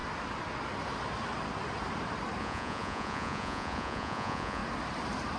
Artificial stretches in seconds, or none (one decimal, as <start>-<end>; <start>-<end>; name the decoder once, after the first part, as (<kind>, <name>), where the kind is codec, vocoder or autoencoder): 2.4-4.6 (vocoder, Vocos)